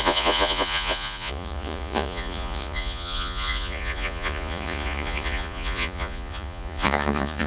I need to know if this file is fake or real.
fake